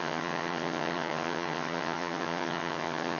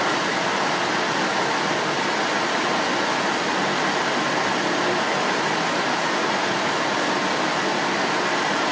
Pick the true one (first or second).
second